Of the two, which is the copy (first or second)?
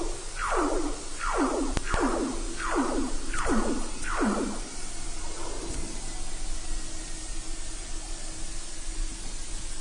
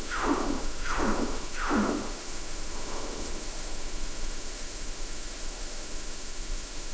second